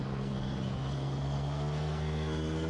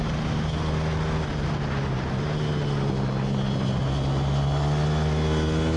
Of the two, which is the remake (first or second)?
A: first